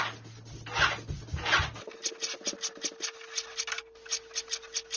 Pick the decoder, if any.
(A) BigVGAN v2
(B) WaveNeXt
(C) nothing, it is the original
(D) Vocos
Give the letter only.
C